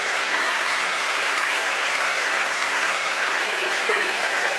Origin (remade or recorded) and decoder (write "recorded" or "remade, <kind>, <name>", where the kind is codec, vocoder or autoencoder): remade, codec, SNAC